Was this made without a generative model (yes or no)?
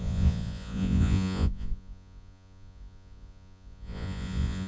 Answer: no